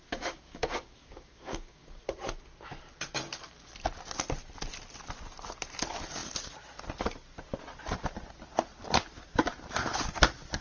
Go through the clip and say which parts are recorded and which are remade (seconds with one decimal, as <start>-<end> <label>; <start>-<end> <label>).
0.0-2.0 remade; 2.0-10.6 recorded